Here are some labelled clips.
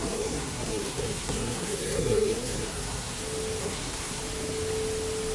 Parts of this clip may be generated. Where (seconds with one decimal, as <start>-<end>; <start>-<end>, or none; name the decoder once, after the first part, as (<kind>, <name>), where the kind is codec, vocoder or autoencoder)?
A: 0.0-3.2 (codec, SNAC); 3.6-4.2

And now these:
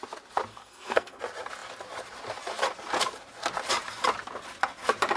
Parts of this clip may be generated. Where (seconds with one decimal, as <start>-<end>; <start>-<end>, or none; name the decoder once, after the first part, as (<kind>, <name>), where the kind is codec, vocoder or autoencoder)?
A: 0.5-1.2 (codec, SNAC)

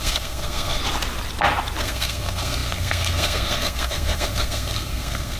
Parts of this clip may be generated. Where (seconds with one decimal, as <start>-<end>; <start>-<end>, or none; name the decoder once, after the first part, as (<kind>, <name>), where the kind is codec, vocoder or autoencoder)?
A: 0.0-0.8 (codec, SNAC); 1.8-5.4